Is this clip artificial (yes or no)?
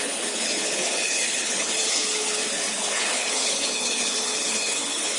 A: yes